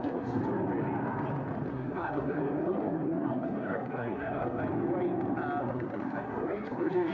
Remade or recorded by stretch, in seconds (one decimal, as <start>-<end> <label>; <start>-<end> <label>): 0.0-0.4 remade; 0.4-1.7 recorded; 1.7-4.6 remade; 4.6-5.6 recorded; 5.6-7.1 remade